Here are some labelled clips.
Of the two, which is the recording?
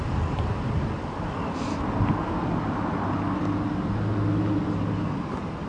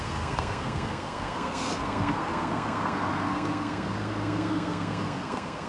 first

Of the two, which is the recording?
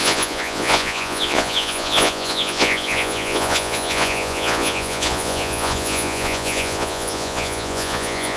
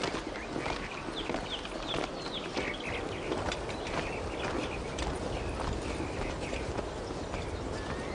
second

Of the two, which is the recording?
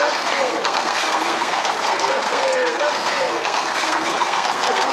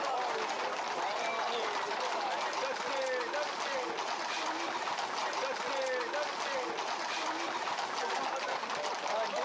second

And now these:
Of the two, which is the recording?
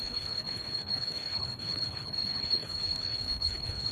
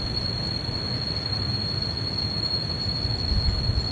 second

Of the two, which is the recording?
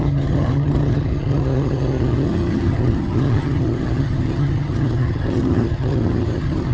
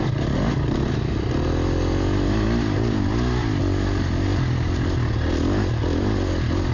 second